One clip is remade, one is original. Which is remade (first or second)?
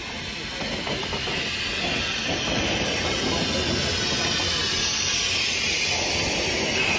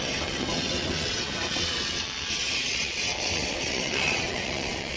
second